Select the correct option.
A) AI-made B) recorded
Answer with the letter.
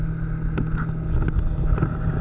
B